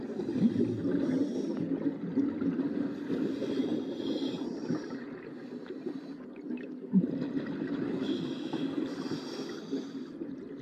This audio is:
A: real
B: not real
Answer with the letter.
A